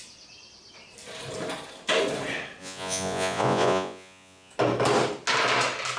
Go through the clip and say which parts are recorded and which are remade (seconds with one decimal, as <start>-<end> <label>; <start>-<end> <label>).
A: 0.0-2.6 recorded; 2.6-4.5 remade; 4.5-6.0 recorded